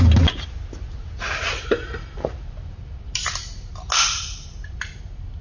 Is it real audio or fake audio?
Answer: real